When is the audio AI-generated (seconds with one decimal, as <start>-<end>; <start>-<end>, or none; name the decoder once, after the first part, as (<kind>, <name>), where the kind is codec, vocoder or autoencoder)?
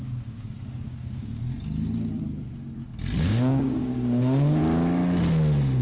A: 0.0-1.4 (codec, DAC); 3.2-4.6